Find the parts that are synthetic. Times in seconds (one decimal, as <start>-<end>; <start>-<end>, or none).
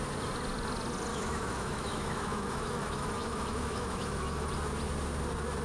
1.1-4.5